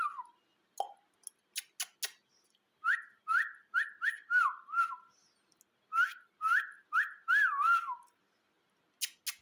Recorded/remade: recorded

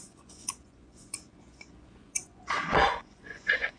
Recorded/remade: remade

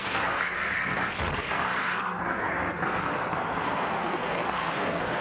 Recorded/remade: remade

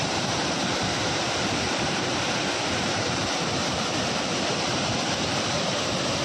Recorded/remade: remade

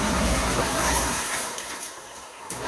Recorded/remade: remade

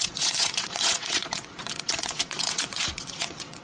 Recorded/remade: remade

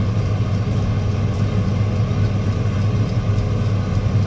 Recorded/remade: recorded